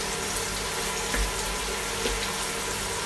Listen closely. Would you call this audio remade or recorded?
recorded